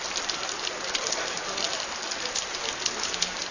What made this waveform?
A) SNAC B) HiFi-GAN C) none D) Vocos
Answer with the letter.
C